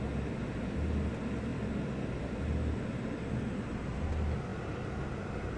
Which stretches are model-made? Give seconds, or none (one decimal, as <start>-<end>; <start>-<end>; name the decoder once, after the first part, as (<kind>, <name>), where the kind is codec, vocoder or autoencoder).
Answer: none